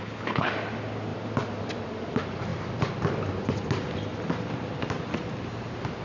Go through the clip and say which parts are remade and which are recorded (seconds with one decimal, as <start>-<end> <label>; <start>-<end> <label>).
0.0-0.5 remade; 0.5-6.0 recorded